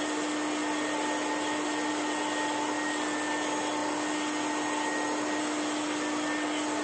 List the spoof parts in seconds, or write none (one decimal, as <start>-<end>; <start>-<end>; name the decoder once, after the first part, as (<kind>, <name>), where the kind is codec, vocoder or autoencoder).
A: none